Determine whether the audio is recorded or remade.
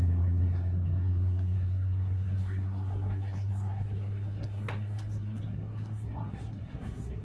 remade